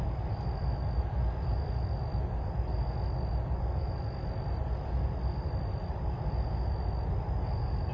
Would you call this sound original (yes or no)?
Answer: yes